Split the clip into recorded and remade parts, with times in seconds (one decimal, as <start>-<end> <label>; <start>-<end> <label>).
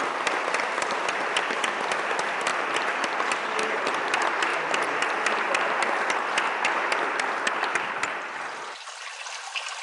0.0-9.8 recorded